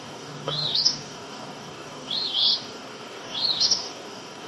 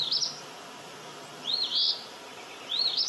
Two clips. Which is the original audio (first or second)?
second